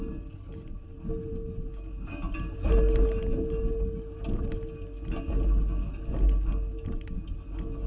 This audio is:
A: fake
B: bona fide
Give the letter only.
B